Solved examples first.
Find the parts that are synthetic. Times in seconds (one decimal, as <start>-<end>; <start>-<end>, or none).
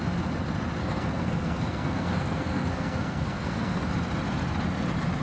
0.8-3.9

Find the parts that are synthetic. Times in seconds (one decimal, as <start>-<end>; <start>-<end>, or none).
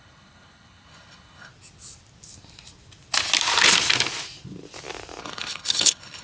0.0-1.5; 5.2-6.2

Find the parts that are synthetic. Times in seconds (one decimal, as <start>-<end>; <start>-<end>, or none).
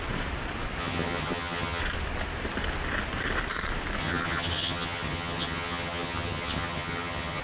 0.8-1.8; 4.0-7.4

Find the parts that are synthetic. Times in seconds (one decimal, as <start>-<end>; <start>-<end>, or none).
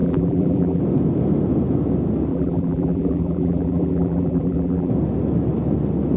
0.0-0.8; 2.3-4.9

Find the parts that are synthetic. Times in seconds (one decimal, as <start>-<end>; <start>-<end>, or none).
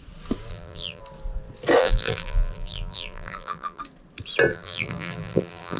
0.5-1.0; 1.8-3.8; 4.5-5.8